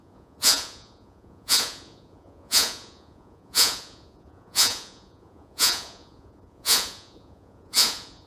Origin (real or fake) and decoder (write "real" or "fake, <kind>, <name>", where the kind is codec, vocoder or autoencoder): fake, vocoder, Vocos